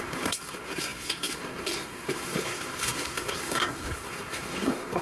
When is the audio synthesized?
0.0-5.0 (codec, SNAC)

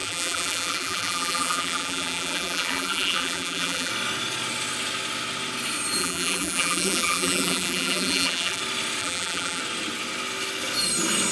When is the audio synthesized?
0.0-3.9 (vocoder, BigVGAN v2); 6.0-8.6; 9.0-9.6